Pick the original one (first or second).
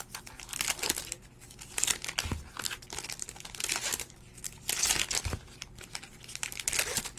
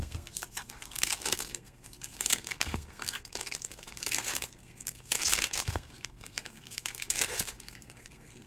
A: first